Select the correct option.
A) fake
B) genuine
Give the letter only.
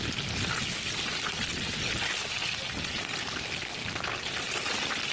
B